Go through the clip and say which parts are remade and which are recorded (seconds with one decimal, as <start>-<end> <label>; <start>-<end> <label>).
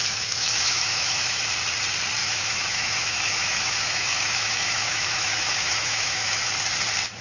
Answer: 0.0-1.4 remade; 1.4-2.2 recorded; 2.2-6.5 remade; 6.5-7.2 recorded